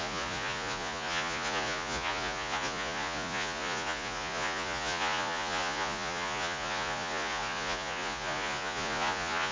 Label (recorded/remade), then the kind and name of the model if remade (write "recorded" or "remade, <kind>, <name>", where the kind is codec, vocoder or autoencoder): remade, vocoder, Vocos